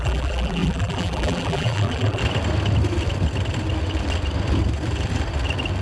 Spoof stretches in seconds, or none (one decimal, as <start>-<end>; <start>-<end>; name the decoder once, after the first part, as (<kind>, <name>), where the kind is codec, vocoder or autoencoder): 0.0-2.2 (vocoder, BigVGAN v2)